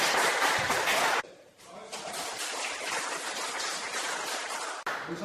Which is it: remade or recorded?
recorded